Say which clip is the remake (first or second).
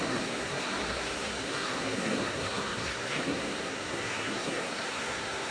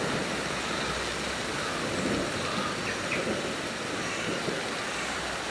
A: first